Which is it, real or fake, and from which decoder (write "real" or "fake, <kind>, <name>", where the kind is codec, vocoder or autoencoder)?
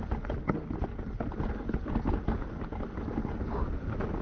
real